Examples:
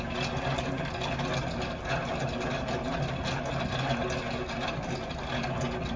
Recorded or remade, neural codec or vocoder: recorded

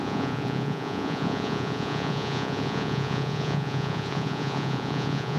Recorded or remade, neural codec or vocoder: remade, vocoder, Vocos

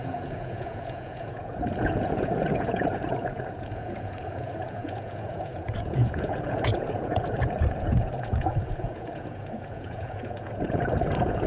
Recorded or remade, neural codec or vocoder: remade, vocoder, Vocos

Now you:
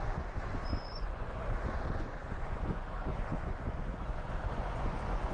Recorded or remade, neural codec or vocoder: remade, vocoder, Vocos